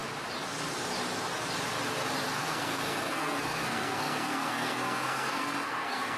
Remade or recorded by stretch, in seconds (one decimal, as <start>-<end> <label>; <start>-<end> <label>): 0.0-2.4 recorded; 2.4-6.2 remade